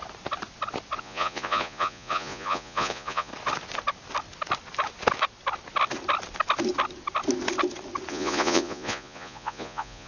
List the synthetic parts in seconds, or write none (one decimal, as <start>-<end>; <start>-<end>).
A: 1.0-3.3; 8.1-10.1